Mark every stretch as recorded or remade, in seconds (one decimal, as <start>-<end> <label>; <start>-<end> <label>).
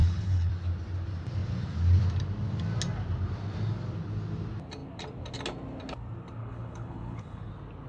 0.0-0.5 remade; 0.5-6.4 recorded; 6.4-7.5 remade; 7.5-7.9 recorded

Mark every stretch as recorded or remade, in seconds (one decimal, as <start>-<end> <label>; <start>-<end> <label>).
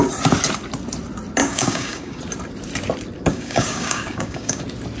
0.0-1.4 recorded; 1.4-2.2 remade; 2.2-3.3 recorded; 3.3-4.6 remade; 4.6-5.0 recorded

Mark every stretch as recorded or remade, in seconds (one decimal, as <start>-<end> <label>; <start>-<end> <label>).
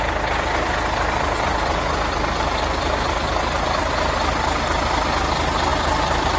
0.0-6.4 recorded